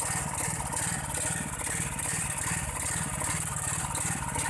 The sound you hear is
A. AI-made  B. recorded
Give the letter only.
B